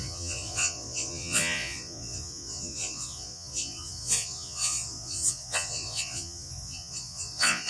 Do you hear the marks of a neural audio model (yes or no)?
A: yes